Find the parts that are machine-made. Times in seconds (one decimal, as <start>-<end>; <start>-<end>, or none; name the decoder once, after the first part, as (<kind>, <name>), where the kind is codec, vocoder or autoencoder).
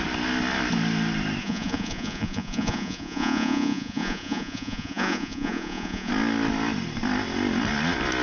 1.4-6.1 (vocoder, Vocos)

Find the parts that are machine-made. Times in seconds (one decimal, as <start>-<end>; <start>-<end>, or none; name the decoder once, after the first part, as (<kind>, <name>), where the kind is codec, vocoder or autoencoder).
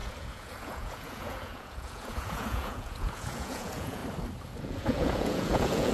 0.0-4.0 (vocoder, Vocos); 4.6-5.9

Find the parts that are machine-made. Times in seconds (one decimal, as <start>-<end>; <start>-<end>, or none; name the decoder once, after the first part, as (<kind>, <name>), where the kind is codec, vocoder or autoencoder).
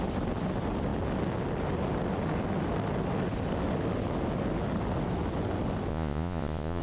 5.9-6.8 (vocoder, Vocos)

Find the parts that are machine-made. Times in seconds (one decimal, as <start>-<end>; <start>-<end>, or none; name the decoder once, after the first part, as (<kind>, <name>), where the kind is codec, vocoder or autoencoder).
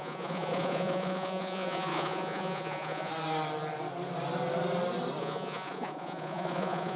0.0-3.1 (vocoder, Vocos); 5.2-7.0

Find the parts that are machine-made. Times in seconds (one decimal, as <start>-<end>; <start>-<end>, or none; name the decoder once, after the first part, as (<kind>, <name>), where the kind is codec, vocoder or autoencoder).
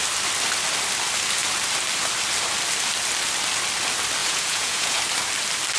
4.2-5.0 (vocoder, Vocos)